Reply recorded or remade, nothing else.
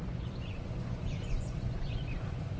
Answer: remade